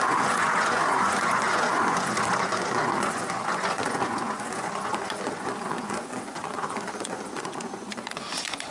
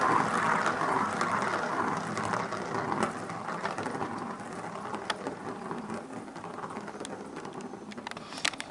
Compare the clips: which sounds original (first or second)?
second